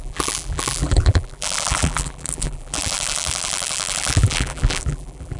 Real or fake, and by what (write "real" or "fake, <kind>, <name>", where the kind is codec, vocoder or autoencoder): fake, vocoder, BigVGAN v2